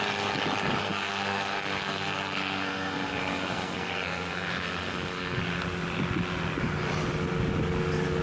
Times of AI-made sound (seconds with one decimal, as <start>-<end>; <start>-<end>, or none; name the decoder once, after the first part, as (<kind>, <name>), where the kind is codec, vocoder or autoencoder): 0.8-5.4 (codec, SNAC)